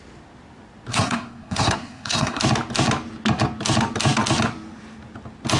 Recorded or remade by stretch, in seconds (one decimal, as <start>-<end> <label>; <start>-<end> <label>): 0.0-0.9 recorded; 0.9-2.4 remade; 2.4-5.6 recorded